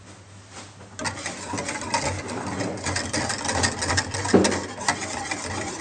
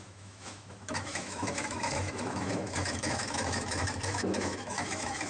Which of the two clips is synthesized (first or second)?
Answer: second